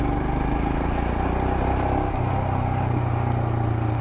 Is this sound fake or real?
real